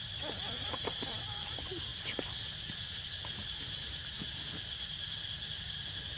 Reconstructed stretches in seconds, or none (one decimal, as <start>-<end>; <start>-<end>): none